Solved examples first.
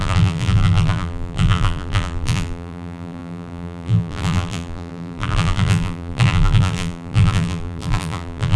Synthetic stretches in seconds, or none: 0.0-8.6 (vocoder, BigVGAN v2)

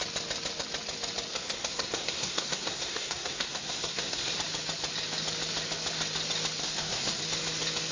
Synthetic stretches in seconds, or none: 1.3-4.3 (codec, SNAC); 6.6-7.2

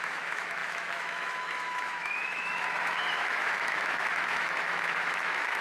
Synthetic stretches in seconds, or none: 0.0-5.6 (autoencoder, DAC-VAE)

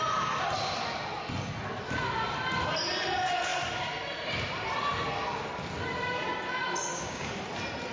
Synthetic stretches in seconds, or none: 6.9-7.4 (codec, DAC)

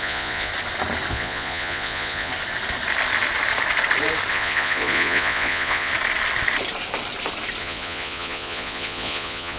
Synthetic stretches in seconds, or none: 0.0-0.5 (vocoder, Vocos); 1.1-2.3; 4.3-5.9; 7.6-9.6

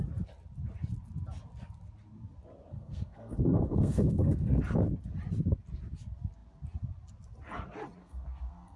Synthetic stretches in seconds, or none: 2.7-4.6 (codec, SNAC); 8.0-8.8